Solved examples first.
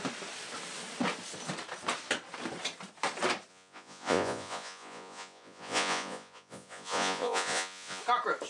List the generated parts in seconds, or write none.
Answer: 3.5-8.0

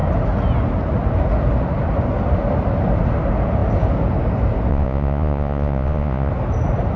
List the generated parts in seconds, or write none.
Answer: 4.7-6.3

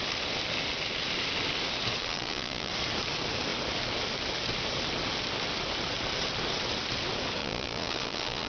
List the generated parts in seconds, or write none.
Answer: 2.0-2.7; 7.4-8.5

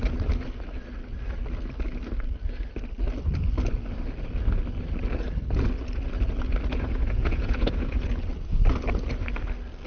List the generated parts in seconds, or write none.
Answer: 6.7-8.1

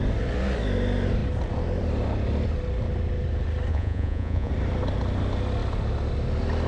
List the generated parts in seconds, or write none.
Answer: 3.7-4.5